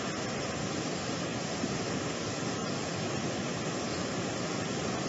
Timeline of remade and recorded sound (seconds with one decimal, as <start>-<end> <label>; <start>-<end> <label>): 0.0-5.1 recorded